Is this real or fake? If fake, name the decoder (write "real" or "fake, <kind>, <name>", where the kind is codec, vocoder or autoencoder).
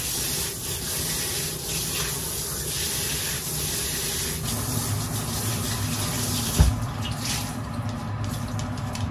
real